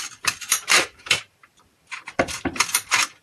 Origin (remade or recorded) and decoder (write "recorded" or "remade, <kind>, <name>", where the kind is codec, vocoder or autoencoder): remade, vocoder, BigVGAN v2